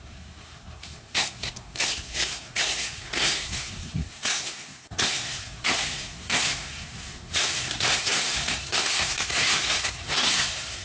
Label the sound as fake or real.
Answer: fake